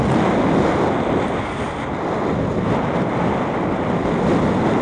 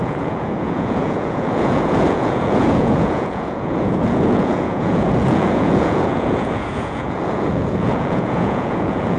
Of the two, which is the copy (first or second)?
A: second